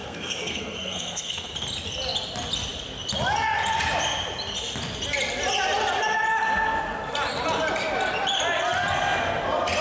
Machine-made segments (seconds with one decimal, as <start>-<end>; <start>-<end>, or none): 0.0-1.5